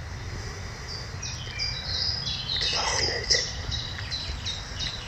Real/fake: real